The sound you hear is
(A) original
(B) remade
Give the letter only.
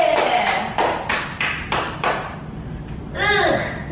A